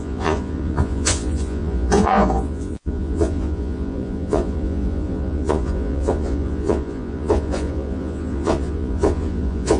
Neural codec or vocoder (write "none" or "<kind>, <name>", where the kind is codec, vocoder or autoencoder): vocoder, Vocos